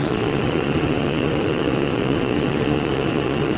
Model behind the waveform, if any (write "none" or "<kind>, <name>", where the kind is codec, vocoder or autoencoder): vocoder, Vocos